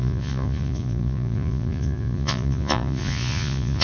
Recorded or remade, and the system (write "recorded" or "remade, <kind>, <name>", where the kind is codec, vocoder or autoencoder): remade, vocoder, Vocos